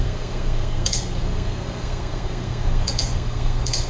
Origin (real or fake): fake